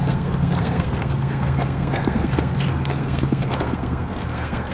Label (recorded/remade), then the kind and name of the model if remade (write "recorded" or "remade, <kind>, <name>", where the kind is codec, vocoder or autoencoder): remade, codec, SNAC